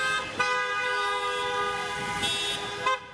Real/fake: real